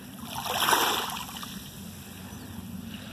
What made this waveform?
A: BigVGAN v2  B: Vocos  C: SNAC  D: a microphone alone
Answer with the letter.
D